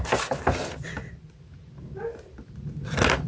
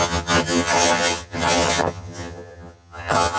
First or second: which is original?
first